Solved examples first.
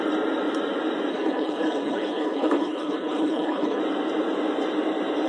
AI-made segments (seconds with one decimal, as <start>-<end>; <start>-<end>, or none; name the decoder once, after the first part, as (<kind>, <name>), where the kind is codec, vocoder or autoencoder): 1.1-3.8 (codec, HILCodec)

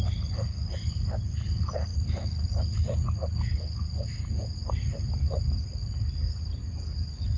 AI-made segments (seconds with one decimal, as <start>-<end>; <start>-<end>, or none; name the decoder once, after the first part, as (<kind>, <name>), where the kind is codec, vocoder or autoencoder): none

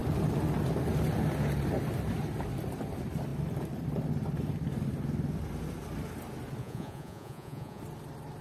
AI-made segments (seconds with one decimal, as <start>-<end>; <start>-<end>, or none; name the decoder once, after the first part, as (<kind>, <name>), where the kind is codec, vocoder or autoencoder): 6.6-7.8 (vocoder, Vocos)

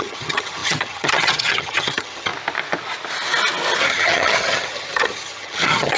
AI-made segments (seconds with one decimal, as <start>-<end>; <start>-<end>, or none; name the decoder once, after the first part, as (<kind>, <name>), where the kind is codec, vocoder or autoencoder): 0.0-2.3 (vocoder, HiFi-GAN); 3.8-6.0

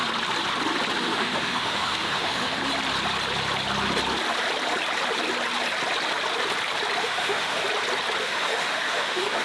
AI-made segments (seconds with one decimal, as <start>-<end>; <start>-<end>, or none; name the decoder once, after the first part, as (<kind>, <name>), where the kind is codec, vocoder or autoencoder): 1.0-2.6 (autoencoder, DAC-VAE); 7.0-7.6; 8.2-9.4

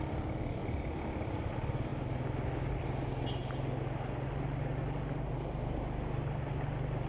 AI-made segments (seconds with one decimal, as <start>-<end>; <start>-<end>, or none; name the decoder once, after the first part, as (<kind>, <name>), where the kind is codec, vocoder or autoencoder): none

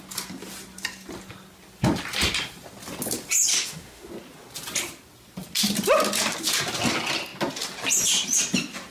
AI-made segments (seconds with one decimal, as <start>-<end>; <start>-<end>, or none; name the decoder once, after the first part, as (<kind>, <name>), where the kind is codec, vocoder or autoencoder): 3.5-4.1 (autoencoder, DAC-VAE)

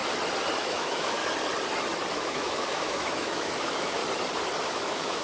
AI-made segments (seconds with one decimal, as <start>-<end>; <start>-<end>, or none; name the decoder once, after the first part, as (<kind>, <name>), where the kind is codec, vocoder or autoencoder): 0.6-1.2 (autoencoder, DAC-VAE); 2.1-4.0; 4.6-5.2